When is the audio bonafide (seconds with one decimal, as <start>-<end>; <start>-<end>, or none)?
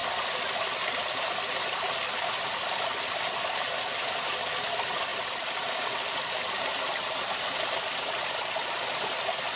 0.0-9.6